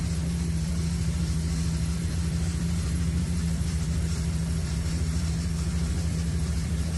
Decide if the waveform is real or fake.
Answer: fake